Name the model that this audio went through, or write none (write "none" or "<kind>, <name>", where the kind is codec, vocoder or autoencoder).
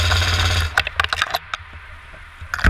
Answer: none